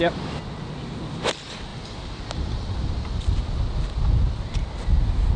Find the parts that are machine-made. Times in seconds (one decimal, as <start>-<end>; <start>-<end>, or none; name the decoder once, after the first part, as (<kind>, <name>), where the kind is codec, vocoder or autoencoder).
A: 1.7-3.5 (vocoder, BigVGAN v2)